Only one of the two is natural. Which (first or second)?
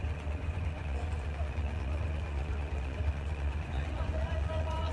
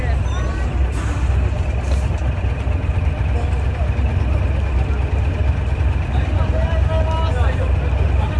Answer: second